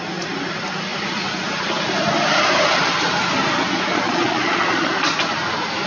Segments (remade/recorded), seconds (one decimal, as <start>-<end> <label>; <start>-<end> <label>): 0.0-3.9 recorded; 3.9-4.9 remade; 4.9-5.9 recorded